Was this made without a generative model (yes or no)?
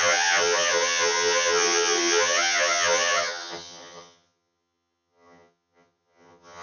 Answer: no